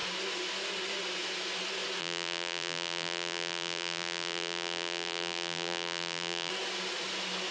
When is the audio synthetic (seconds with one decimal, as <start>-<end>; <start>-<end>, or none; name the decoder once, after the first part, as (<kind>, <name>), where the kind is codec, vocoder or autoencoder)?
2.0-6.5 (vocoder, BigVGAN v2)